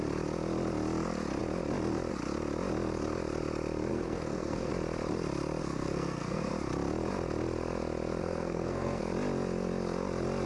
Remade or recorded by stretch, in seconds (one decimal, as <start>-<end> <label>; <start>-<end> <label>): 0.0-3.9 recorded; 3.9-4.7 remade; 4.7-5.6 recorded; 5.6-6.5 remade; 6.5-8.2 recorded; 8.2-9.0 remade; 9.0-10.5 recorded